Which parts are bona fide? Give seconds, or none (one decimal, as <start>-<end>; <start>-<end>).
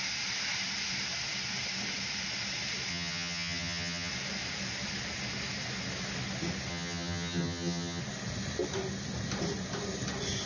0.0-2.9; 4.1-6.7; 8.0-10.5